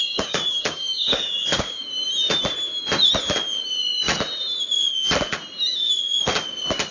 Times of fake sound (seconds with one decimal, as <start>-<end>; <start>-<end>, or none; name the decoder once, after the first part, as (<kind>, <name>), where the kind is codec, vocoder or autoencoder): 0.0-1.9 (codec, DAC)

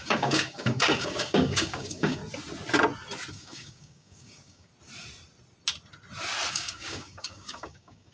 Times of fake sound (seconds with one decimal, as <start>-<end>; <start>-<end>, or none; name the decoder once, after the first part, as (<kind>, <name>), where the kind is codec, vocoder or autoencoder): 0.0-2.2 (codec, DAC); 3.3-4.7; 6.5-8.1

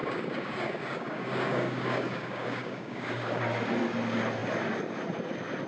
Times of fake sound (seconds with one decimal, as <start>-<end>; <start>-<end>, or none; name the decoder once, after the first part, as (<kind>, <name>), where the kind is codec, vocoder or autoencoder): 0.0-3.4 (codec, DAC)